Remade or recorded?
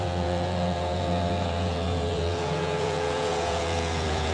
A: remade